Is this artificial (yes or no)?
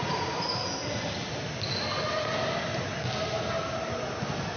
no